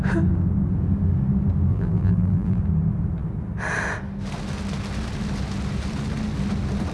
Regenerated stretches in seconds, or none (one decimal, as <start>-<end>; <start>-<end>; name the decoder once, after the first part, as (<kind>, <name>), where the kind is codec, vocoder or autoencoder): 1.7-2.6 (vocoder, BigVGAN v2)